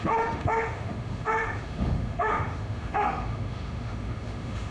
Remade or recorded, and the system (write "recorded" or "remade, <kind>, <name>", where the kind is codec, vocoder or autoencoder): remade, autoencoder, DAC-VAE